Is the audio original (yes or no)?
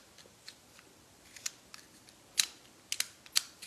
yes